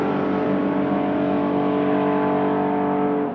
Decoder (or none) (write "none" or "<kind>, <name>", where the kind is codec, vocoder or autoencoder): none